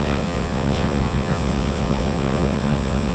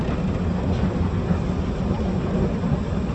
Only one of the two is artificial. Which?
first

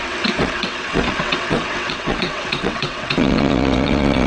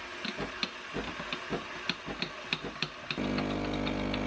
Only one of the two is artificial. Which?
first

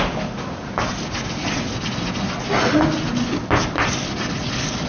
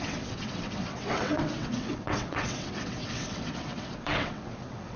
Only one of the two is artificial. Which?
second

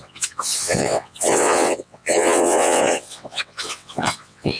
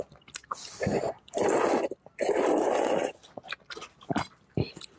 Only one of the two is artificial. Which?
first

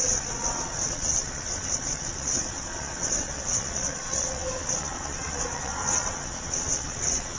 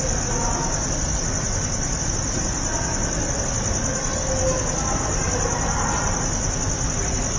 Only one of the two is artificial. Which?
first